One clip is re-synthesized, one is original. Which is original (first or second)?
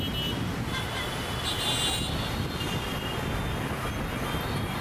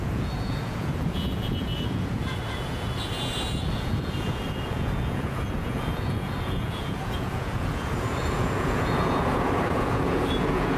first